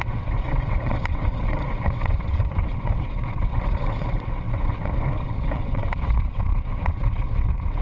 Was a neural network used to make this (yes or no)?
yes